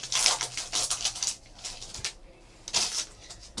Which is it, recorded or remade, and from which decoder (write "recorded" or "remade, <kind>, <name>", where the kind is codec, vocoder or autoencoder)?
recorded